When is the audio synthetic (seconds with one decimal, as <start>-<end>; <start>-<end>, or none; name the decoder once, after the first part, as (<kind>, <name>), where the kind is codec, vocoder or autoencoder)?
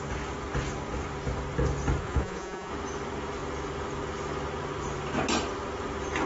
2.0-2.7 (vocoder, Vocos)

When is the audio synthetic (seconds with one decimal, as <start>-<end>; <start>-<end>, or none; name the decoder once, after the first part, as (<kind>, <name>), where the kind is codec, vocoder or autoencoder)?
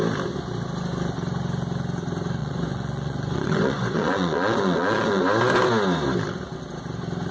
2.4-5.2 (vocoder, Vocos)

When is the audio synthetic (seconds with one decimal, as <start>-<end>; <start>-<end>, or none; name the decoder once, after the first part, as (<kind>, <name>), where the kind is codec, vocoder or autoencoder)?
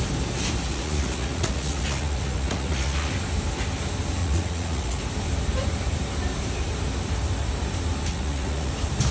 0.7-3.1 (vocoder, Vocos); 4.2-5.0; 8.1-8.7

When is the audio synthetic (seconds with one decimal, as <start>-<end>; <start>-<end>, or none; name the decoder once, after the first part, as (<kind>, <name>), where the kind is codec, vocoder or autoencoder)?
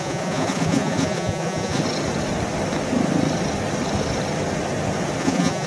0.0-1.8 (vocoder, Vocos); 5.2-5.7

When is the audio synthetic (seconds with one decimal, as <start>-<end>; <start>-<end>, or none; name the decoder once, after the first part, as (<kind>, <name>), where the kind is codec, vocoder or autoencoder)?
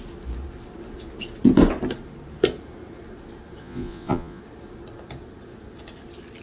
3.6-4.4 (vocoder, Vocos)